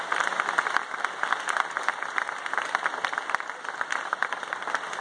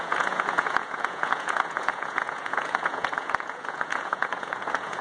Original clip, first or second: first